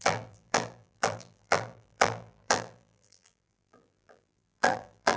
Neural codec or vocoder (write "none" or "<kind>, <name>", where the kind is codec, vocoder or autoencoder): vocoder, BigVGAN v2